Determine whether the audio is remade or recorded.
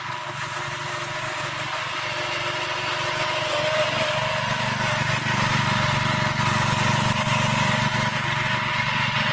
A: recorded